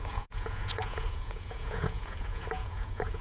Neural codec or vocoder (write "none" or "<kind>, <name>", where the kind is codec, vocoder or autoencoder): vocoder, Vocos